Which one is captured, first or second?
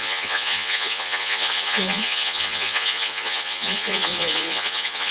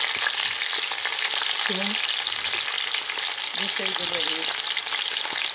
second